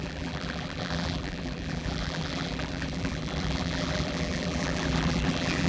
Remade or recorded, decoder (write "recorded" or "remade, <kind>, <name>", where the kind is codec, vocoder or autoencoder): remade, vocoder, BigVGAN v2